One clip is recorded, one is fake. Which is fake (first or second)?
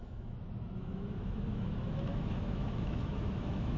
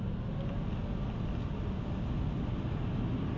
first